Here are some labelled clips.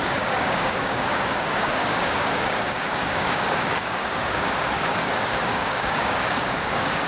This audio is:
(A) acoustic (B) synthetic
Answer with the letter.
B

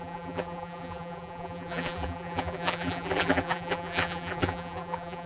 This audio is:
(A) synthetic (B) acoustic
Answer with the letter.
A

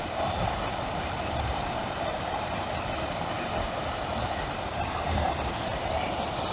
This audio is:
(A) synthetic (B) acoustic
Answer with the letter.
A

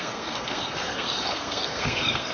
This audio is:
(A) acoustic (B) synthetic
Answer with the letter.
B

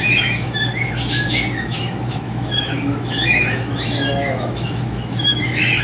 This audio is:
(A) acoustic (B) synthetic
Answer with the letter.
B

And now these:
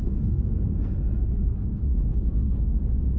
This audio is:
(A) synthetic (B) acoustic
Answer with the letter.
A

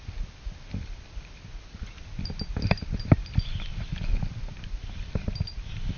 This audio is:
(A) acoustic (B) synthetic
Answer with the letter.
A